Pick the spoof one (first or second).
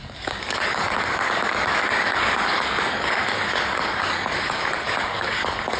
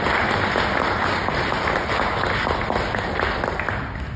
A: first